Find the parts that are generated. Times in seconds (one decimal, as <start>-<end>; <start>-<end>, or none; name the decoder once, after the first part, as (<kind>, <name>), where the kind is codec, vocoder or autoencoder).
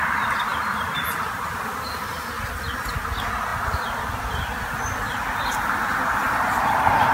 none